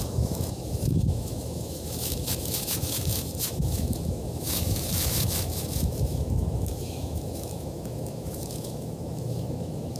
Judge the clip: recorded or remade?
remade